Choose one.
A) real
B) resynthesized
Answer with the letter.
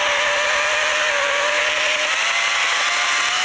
A